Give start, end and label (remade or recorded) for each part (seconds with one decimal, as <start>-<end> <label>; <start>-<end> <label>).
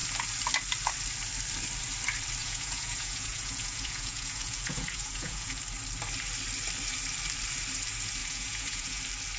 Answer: 0.0-2.4 recorded; 2.4-5.6 remade; 5.6-8.2 recorded; 8.2-9.0 remade; 9.0-9.4 recorded